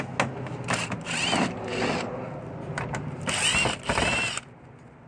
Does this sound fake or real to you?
real